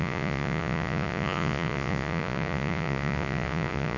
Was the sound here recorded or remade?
remade